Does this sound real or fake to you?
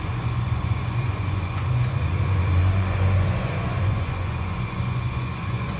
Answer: fake